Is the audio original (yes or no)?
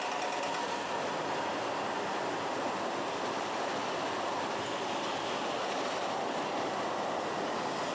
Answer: yes